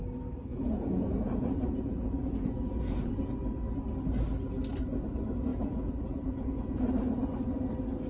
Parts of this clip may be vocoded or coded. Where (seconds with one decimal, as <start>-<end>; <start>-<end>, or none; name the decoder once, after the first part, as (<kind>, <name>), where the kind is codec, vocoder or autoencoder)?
0.5-3.3 (vocoder, Vocos); 5.5-6.8